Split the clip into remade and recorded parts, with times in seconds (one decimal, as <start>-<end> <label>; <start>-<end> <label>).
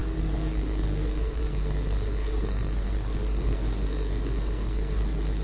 0.0-5.4 remade